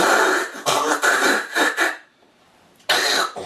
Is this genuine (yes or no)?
no